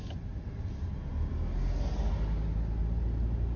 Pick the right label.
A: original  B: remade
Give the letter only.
A